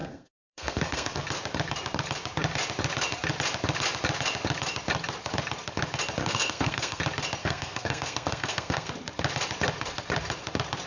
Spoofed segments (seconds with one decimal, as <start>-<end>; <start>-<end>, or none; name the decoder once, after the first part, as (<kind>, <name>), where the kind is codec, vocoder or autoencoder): 0.0-1.2 (codec, SNAC); 6.2-7.0; 7.4-8.9